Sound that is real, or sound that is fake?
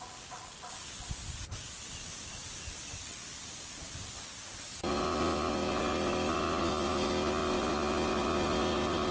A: real